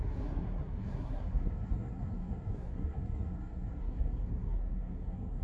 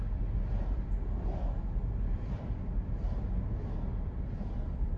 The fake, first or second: first